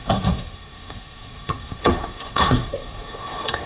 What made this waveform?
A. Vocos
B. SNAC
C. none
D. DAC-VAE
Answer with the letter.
B